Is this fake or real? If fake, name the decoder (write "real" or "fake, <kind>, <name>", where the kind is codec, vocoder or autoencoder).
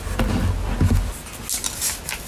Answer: real